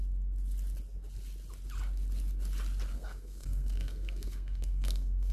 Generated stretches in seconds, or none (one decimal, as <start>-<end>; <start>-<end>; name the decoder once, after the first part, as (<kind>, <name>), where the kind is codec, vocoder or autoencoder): 2.9-5.3 (codec, SNAC)